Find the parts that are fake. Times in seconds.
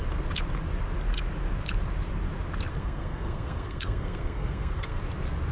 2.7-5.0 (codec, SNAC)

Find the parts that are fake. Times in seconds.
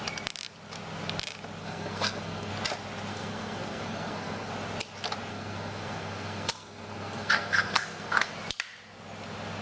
1.6-2.5 (codec, SNAC); 3.1-4.5; 5.3-8.3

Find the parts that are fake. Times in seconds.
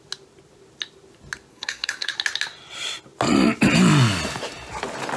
1.5-2.1 (codec, SNAC)